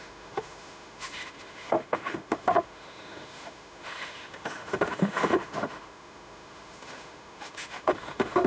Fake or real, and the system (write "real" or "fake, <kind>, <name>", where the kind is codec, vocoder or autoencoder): fake, autoencoder, DAC-VAE